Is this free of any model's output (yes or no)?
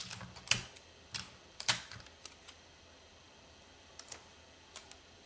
yes